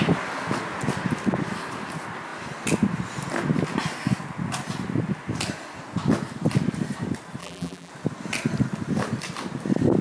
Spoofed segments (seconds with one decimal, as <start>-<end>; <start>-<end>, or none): 7.4-7.9

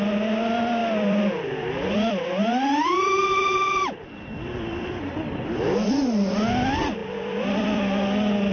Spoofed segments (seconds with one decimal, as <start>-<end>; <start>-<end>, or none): 0.8-5.9; 7.0-8.5

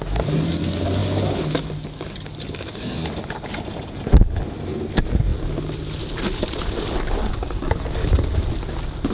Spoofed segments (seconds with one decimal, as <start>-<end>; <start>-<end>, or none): none

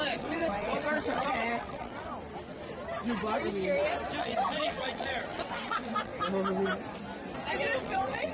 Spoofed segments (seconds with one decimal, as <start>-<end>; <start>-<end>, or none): 0.0-2.1; 4.2-6.1; 7.8-8.3

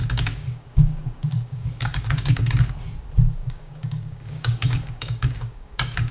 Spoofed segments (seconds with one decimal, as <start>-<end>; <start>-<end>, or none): 0.0-2.7; 3.4-6.1

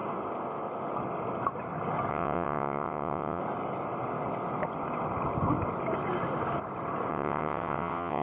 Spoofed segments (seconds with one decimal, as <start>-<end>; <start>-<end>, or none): 2.1-3.4; 7.1-8.2

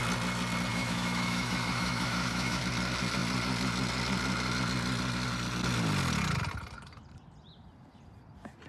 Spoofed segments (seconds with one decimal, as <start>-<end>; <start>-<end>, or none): 0.7-2.6

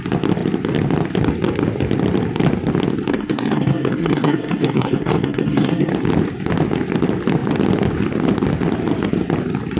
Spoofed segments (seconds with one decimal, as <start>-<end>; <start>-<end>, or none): 3.1-5.9